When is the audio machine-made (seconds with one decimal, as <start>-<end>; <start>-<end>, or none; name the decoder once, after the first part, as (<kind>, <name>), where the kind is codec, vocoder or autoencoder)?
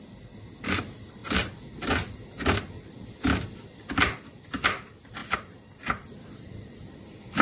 none